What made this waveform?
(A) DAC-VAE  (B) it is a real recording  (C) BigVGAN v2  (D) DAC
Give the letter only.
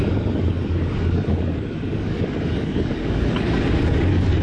D